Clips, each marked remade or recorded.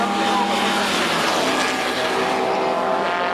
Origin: recorded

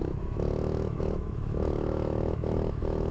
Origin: remade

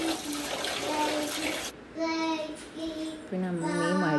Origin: recorded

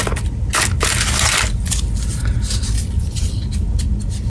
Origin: recorded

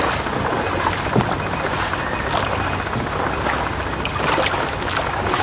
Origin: recorded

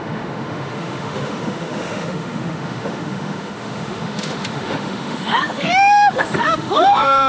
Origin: remade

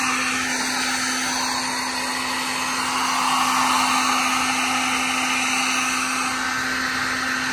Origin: recorded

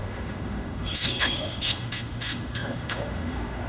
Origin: remade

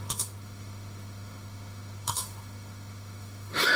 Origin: remade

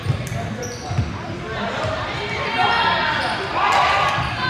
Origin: recorded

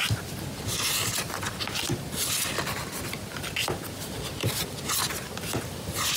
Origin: recorded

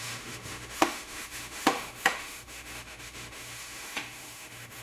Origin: remade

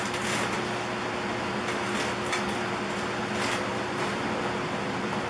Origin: recorded